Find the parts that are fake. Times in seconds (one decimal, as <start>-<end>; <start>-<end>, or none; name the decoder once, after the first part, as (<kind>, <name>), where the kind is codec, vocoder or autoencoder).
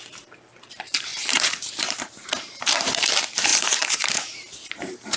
0.0-5.2 (vocoder, BigVGAN v2)